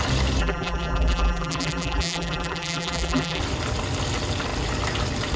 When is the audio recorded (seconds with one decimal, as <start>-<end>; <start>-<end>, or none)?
0.0-0.4; 3.4-5.4